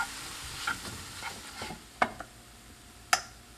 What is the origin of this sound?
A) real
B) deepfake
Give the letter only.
A